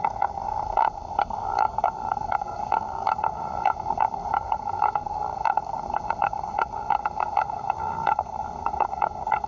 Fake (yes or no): yes